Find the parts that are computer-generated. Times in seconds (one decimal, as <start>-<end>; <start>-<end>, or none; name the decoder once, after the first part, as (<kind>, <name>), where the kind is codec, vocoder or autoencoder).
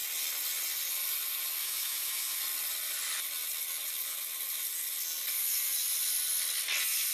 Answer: 1.6-2.4 (autoencoder, DAC-VAE)